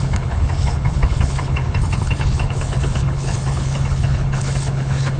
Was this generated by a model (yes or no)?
yes